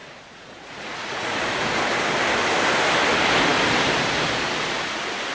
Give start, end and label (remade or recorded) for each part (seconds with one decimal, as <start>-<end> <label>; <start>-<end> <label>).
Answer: 0.0-1.8 remade; 1.8-5.3 recorded